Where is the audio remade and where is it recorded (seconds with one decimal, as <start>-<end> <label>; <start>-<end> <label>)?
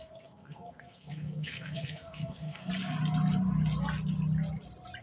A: 0.0-2.7 remade; 2.7-5.0 recorded